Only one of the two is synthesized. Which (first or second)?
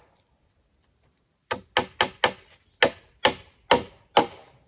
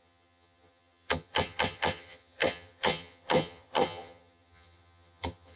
second